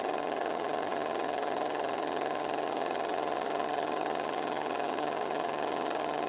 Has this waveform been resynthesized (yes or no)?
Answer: yes